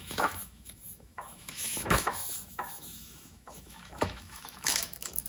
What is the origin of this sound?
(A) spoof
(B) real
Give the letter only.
A